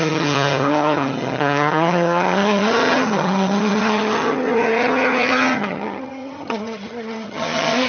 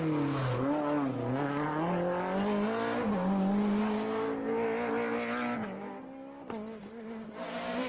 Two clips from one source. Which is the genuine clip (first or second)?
second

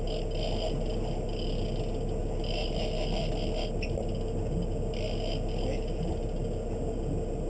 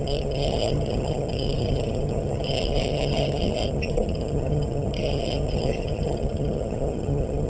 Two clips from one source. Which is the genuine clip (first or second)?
first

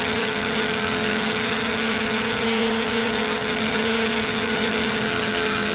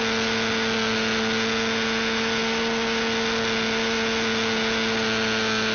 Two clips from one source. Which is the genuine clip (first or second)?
second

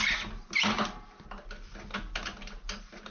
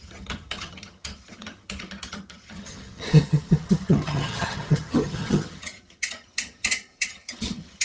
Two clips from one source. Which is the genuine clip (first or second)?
first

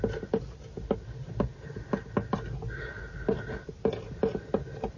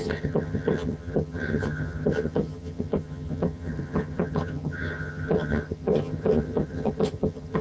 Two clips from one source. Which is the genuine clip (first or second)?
first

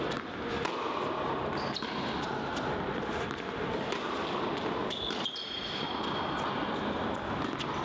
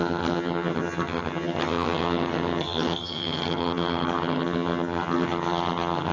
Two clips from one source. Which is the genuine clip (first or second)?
first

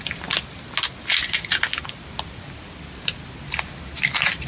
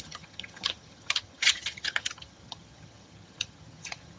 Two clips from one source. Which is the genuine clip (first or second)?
first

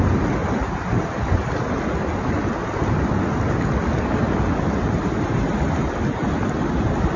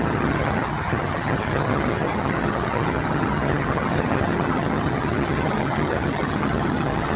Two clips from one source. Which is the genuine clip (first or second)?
first